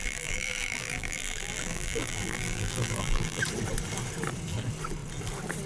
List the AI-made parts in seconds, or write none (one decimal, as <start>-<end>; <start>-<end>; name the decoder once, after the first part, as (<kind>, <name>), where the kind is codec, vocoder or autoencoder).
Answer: 0.0-3.4 (vocoder, BigVGAN v2)